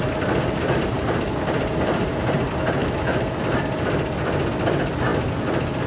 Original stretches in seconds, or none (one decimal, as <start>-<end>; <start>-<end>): 0.0-2.8; 3.4-5.9